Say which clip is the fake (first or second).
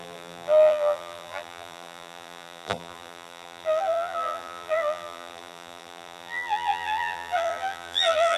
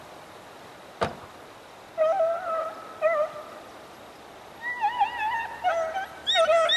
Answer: first